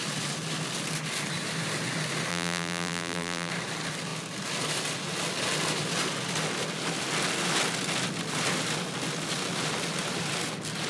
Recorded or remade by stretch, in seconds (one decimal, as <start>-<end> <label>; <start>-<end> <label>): 0.0-2.3 recorded; 2.3-3.5 remade; 3.5-10.9 recorded